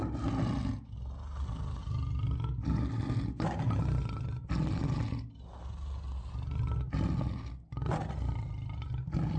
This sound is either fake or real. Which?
real